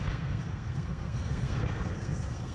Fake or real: fake